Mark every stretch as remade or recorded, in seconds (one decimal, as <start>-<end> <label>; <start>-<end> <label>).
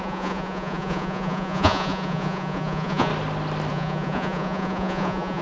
0.0-3.1 remade; 3.1-3.7 recorded; 3.7-5.4 remade